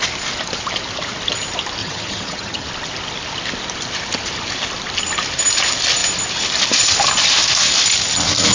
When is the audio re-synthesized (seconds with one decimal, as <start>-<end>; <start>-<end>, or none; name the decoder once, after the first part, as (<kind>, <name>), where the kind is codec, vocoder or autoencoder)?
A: 1.8-2.7 (vocoder, HiFi-GAN)